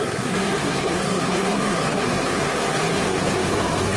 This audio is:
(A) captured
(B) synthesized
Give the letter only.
B